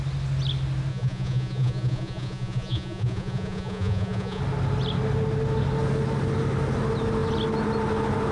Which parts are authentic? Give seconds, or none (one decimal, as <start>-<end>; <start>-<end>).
0.0-0.9; 4.4-8.3